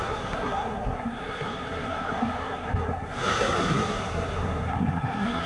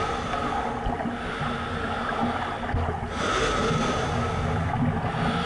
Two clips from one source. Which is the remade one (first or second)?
first